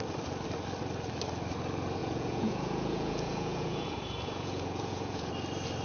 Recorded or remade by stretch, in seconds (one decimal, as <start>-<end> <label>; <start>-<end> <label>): 0.0-2.0 recorded; 2.0-5.3 remade; 5.3-5.8 recorded